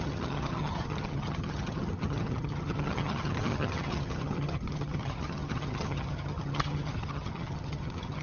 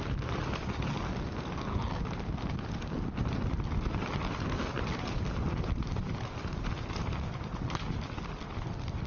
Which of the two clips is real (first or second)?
second